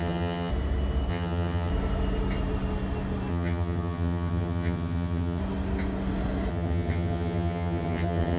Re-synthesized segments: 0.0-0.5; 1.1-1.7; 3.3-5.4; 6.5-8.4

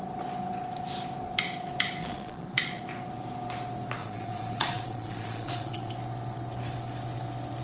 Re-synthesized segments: 2.0-2.8; 4.0-5.9

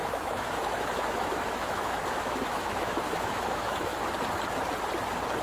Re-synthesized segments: 0.0-3.9